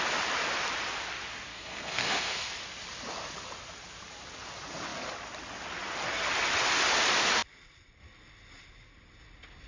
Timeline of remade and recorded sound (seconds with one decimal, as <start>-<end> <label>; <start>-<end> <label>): 0.0-1.5 recorded; 1.5-2.5 remade; 2.5-9.7 recorded